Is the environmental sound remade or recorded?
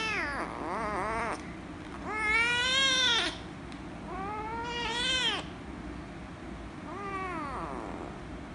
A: recorded